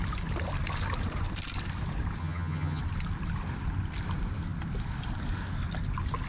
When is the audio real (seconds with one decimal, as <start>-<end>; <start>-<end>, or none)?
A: 0.0-2.2; 2.8-6.3